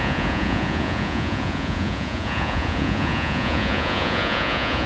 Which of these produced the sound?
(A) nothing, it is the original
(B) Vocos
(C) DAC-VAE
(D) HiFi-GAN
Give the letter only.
B